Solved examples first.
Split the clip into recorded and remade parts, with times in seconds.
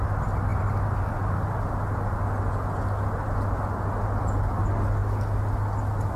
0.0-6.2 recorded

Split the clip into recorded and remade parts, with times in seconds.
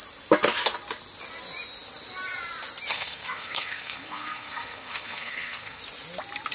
0.0-2.9 recorded; 2.9-5.8 remade; 5.8-6.5 recorded